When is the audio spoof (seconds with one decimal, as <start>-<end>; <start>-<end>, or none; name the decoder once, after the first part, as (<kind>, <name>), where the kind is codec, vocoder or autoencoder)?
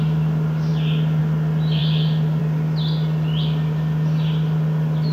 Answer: 1.8-2.4 (vocoder, BigVGAN v2)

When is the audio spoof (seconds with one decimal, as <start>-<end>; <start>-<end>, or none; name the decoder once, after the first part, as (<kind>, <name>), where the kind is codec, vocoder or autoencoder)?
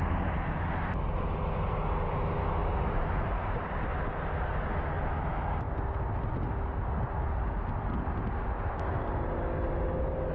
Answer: 2.6-3.7 (vocoder, BigVGAN v2)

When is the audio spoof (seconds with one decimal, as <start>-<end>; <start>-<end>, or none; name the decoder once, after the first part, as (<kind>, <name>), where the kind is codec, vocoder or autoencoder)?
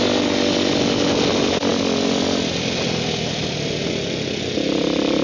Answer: none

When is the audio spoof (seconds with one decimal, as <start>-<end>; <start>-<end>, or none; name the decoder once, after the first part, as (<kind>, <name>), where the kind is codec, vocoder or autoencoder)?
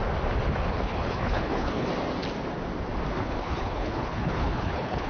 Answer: 0.7-1.9 (codec, HILCodec); 3.2-5.1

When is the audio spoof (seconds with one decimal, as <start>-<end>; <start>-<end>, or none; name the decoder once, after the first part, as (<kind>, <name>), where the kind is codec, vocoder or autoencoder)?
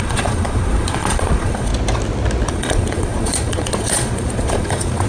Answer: 0.0-1.7 (vocoder, Vocos); 2.5-5.1